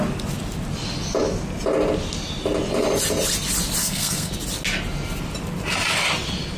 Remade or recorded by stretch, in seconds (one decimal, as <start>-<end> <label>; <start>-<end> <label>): 0.0-3.8 recorded; 3.8-4.3 remade; 4.3-6.6 recorded